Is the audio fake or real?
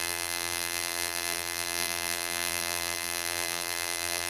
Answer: fake